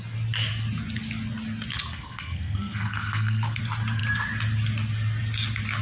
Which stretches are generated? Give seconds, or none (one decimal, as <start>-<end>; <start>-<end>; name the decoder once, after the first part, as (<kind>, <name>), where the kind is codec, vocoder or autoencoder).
1.9-3.6 (codec, SNAC)